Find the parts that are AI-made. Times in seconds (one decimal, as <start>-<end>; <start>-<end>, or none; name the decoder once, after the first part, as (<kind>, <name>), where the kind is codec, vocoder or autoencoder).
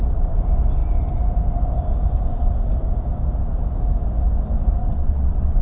4.8-5.6 (vocoder, WaveNeXt)